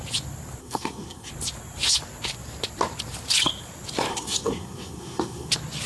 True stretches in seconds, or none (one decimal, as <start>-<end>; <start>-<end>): 0.0-0.6; 1.3-4.1; 5.5-5.9